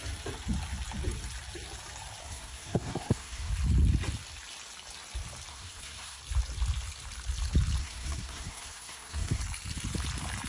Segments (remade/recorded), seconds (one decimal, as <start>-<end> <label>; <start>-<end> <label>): 0.0-2.2 recorded; 2.2-3.5 remade; 3.5-5.5 recorded; 5.5-6.2 remade; 6.2-7.8 recorded; 7.8-9.4 remade; 9.4-10.5 recorded